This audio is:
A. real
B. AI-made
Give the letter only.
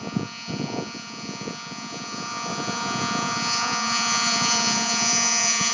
B